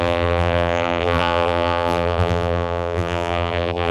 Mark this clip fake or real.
fake